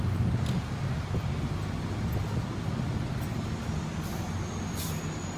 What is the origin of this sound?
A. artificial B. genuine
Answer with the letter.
B